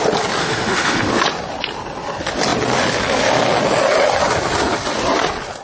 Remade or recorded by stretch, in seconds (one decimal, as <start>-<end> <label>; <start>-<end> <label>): 0.0-0.4 recorded; 0.4-1.1 remade; 1.1-5.6 recorded